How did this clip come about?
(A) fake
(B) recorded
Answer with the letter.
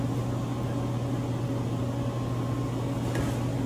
B